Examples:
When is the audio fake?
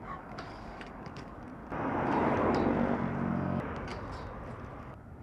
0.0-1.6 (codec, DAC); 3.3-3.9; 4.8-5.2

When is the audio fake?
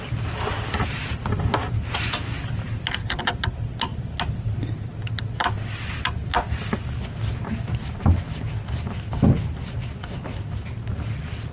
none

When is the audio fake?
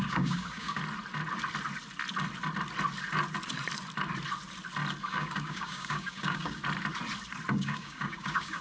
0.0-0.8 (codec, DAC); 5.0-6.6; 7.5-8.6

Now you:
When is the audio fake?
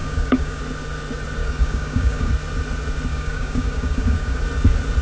0.0-0.6 (codec, DAC); 1.4-2.3; 3.1-4.4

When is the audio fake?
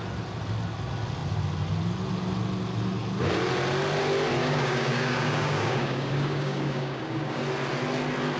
4.4-7.4 (codec, DAC)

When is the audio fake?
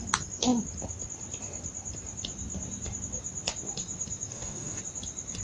4.3-4.8 (codec, DAC)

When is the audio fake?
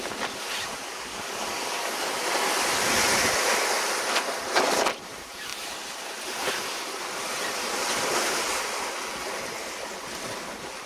0.9-1.9 (codec, DAC)